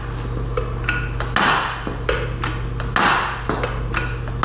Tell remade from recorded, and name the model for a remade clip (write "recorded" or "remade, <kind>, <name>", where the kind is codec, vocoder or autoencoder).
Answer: recorded